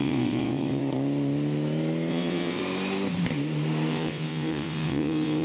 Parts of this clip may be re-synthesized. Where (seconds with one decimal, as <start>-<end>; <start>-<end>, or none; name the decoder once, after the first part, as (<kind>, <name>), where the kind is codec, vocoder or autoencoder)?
0.0-0.8 (vocoder, WaveNeXt); 2.1-2.6; 3.9-5.4